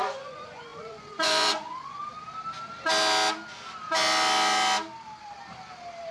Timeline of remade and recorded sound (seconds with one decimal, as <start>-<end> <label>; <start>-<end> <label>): 0.0-2.0 remade; 2.0-6.1 recorded

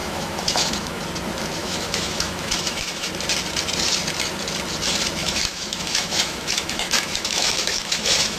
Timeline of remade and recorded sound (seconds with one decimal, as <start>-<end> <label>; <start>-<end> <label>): 0.0-1.0 remade; 1.0-1.6 recorded; 1.6-3.1 remade; 3.1-5.2 recorded; 5.2-8.4 remade

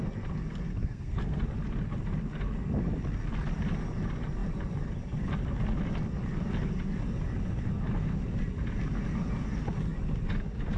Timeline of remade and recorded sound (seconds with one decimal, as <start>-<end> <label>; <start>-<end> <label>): 0.0-0.7 recorded; 0.7-1.4 remade; 1.4-10.8 recorded